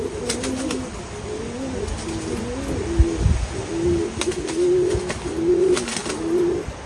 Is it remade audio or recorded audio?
recorded